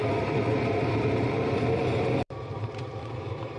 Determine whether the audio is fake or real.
fake